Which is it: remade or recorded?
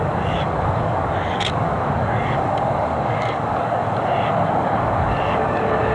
remade